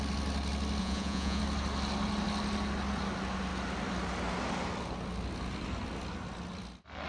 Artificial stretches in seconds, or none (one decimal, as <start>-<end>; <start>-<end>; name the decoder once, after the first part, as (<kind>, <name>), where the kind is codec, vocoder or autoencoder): 0.8-1.4 (vocoder, Vocos)